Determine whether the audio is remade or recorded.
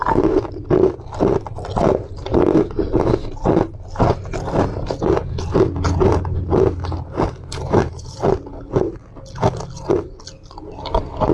recorded